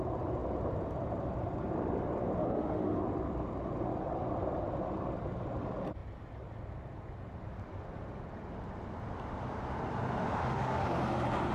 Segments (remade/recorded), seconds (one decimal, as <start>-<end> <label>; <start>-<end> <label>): 0.0-2.4 recorded; 2.4-3.0 remade; 3.0-10.4 recorded; 10.4-11.0 remade; 11.0-11.5 recorded

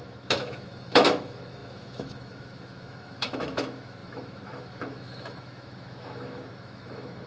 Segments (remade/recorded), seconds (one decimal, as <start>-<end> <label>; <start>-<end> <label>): 0.0-7.3 remade

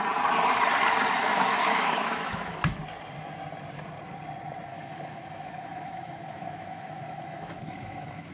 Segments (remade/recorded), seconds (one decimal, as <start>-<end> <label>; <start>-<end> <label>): 0.0-1.3 recorded; 1.3-2.8 remade; 2.8-4.7 recorded; 4.7-8.3 remade

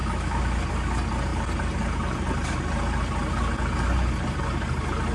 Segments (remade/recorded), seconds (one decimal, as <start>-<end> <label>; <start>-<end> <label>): 0.0-0.6 remade; 0.6-5.1 recorded

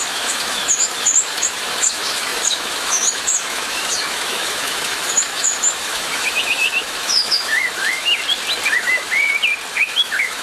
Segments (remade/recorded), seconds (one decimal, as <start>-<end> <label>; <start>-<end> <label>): 0.0-8.2 remade; 8.2-8.7 recorded; 8.7-9.1 remade; 9.1-9.7 recorded; 9.7-10.4 remade

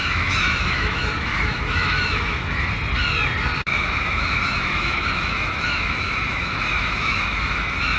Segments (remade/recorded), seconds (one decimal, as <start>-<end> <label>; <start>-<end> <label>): 0.0-2.7 remade; 2.7-3.7 recorded; 3.7-8.0 remade